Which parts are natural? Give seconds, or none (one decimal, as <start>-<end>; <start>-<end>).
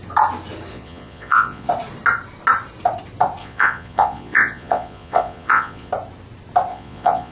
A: 0.0-0.7; 1.7-3.4; 5.9-6.7